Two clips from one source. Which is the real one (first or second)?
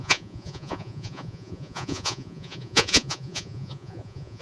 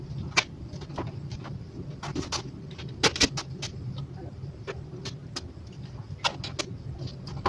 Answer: second